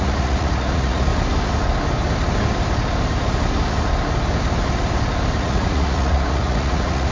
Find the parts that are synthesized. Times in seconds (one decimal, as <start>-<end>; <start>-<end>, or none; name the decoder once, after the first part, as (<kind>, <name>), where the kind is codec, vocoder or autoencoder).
0.0-1.1 (vocoder, Vocos); 5.4-7.1